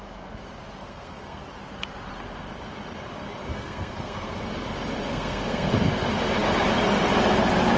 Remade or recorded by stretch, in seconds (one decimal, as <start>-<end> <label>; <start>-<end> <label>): 0.0-0.8 recorded; 0.8-1.4 remade; 1.4-3.5 recorded; 3.5-4.4 remade; 4.4-5.1 recorded; 5.1-5.7 remade; 5.7-7.8 recorded